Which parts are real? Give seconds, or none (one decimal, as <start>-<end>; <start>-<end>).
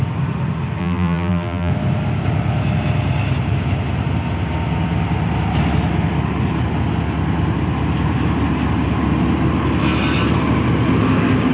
0.0-0.8; 1.7-11.5